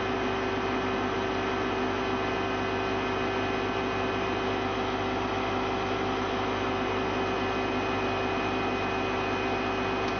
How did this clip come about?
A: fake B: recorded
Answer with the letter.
B